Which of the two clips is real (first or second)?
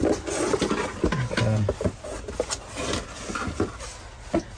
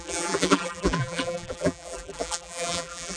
first